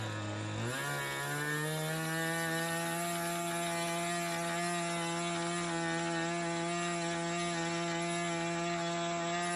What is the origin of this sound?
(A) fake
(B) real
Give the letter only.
B